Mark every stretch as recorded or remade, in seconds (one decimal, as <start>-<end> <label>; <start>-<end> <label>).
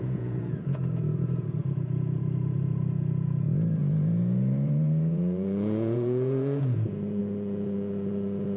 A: 0.0-8.6 remade